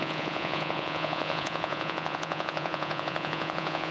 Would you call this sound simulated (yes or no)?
yes